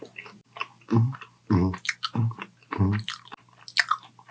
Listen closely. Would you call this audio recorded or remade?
recorded